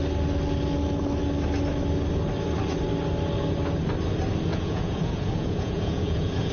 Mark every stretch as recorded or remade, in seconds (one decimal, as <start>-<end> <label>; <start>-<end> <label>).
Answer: 0.0-4.5 recorded; 4.5-6.5 remade